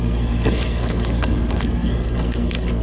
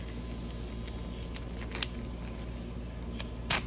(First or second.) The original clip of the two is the second